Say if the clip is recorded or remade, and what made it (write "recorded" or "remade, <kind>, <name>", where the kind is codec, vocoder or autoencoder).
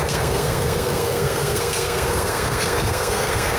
remade, codec, SNAC